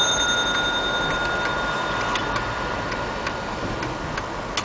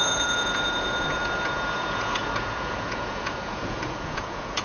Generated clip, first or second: second